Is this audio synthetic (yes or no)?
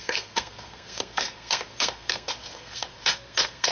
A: yes